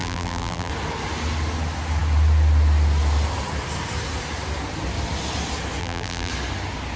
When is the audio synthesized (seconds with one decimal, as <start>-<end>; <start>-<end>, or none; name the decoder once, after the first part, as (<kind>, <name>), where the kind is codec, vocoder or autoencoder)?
0.0-0.7 (vocoder, BigVGAN v2); 5.8-6.3